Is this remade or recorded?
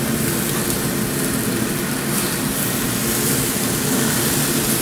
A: recorded